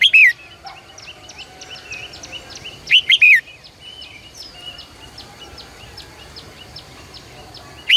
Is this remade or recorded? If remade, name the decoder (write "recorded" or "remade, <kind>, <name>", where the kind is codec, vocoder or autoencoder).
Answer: recorded